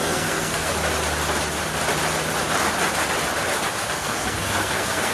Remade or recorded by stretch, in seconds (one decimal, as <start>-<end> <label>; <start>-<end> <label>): 0.0-0.7 remade; 0.7-3.8 recorded; 3.8-5.1 remade